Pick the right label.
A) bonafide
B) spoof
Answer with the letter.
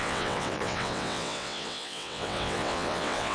B